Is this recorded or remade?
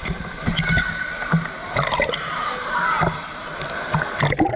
recorded